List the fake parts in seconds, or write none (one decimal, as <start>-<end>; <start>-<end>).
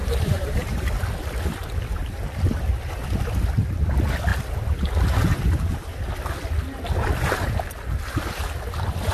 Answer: 0.0-0.9